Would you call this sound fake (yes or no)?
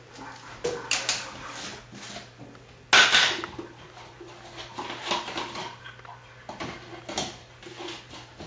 no